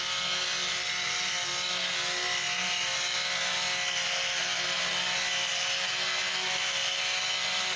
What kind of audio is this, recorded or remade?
recorded